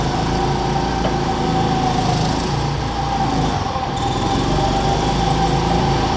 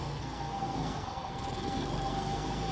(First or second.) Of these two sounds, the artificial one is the second